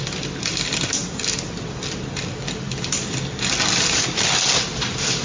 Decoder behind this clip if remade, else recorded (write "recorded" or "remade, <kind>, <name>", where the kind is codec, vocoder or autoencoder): recorded